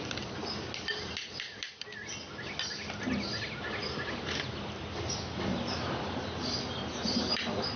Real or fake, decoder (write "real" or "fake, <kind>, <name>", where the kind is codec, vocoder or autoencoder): real